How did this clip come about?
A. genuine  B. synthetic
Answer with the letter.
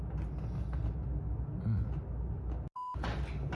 A